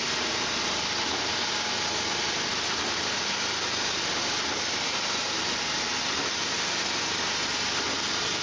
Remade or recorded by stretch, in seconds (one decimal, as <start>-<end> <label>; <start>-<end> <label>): 0.0-8.4 recorded